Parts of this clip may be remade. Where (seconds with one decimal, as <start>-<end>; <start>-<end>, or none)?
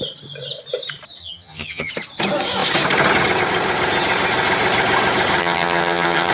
1.2-1.9; 5.4-6.3